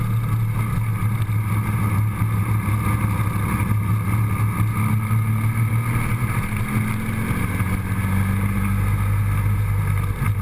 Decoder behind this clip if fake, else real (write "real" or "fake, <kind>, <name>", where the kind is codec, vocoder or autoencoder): real